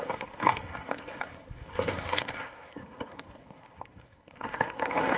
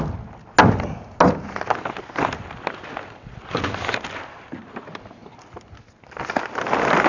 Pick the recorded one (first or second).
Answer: second